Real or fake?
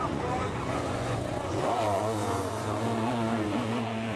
fake